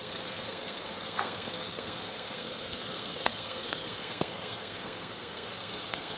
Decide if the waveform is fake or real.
fake